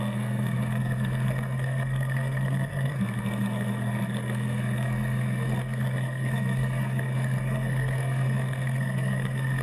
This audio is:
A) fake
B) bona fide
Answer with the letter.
A